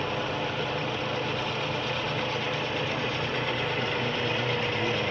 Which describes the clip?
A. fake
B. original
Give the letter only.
B